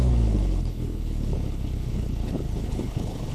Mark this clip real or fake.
fake